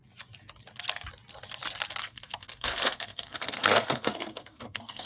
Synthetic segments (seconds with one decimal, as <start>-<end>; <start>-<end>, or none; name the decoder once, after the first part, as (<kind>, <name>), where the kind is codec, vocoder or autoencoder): 2.0-5.1 (codec, SNAC)